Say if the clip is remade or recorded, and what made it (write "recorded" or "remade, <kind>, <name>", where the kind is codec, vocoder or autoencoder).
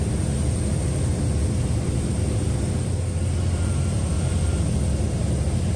recorded